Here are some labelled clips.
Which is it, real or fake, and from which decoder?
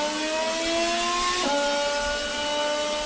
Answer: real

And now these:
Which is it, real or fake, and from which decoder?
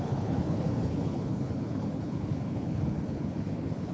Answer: fake, codec, HILCodec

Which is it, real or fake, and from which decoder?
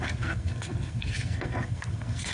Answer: fake, codec, SNAC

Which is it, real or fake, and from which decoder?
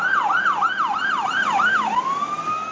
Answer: real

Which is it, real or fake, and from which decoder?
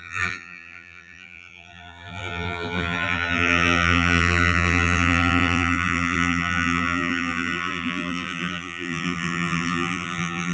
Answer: fake, vocoder, BigVGAN v2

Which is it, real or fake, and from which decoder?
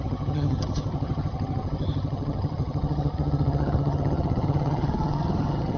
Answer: fake, vocoder, HiFi-GAN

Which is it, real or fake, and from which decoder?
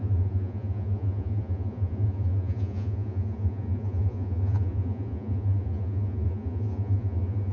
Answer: fake, vocoder, Vocos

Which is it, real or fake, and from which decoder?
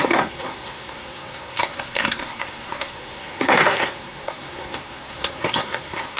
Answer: fake, codec, SNAC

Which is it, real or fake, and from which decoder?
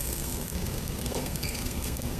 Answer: fake, codec, SNAC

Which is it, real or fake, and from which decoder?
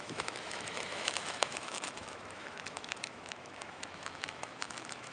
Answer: fake, autoencoder, DAC-VAE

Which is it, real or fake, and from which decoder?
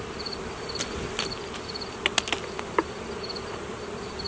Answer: real